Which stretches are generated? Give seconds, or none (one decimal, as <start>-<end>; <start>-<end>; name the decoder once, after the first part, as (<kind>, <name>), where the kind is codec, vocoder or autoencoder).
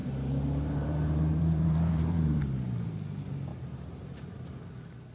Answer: 0.0-2.4 (vocoder, BigVGAN v2); 3.5-4.5